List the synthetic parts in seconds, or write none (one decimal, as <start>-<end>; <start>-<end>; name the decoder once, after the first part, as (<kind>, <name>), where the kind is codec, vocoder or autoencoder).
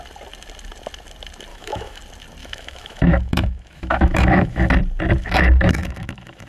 1.5-2.0 (autoencoder, DAC-VAE); 2.4-4.7; 5.2-6.5